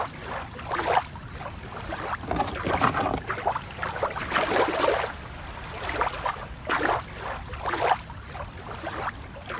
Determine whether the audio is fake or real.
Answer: real